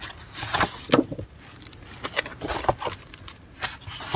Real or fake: real